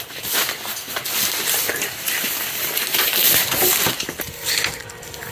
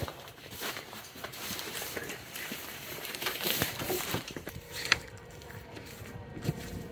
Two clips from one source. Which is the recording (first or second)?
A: first